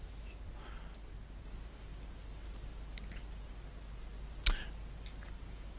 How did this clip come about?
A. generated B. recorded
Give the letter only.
B